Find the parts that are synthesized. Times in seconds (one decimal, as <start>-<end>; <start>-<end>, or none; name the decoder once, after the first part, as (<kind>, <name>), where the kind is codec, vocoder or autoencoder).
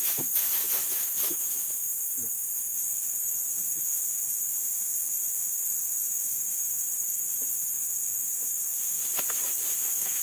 0.0-9.0 (autoencoder, DAC-VAE); 9.7-10.2